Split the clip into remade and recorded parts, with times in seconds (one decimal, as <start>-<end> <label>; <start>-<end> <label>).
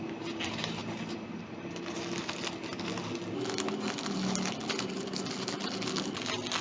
0.0-6.6 recorded